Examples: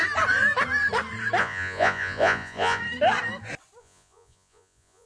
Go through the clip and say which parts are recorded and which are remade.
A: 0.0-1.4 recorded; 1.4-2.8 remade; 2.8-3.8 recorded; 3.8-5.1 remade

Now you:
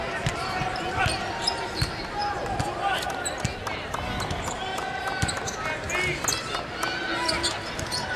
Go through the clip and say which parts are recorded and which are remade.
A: 0.0-8.2 recorded

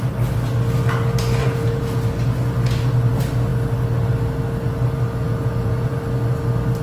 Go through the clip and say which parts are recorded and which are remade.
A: 0.0-1.4 recorded; 1.4-2.0 remade; 2.0-5.2 recorded; 5.2-5.9 remade; 5.9-6.8 recorded